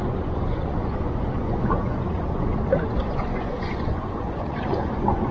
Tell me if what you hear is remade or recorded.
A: remade